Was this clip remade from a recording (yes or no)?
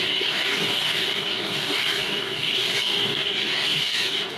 yes